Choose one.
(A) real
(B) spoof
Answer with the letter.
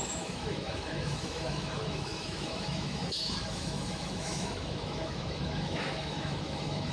B